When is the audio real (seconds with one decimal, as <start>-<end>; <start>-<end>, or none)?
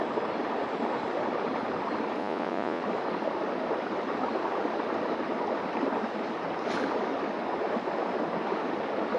0.0-2.2; 2.8-9.2